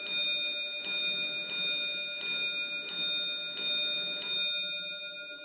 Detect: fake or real real